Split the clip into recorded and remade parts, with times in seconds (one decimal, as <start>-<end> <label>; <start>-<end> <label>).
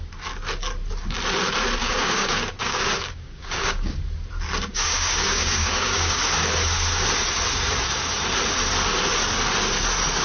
0.0-1.8 recorded; 1.8-4.0 remade; 4.0-4.7 recorded; 4.7-6.2 remade; 6.2-10.2 recorded